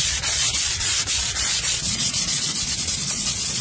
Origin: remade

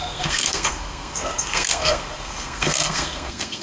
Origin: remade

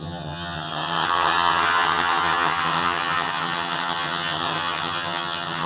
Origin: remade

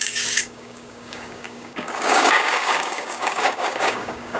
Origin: remade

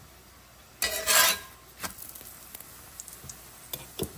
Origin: recorded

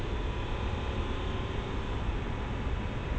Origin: recorded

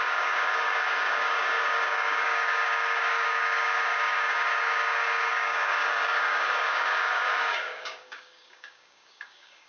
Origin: remade